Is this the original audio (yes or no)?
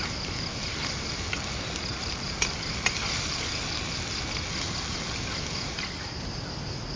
yes